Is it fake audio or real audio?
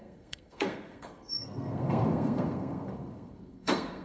fake